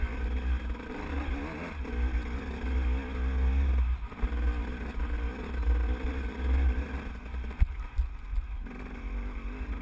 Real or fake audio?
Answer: real